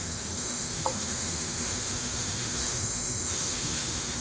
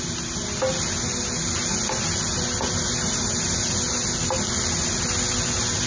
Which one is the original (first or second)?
second